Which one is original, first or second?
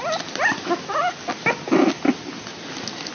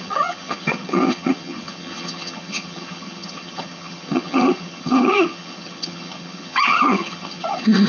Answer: first